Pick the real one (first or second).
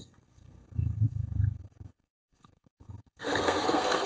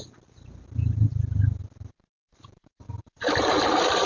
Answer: second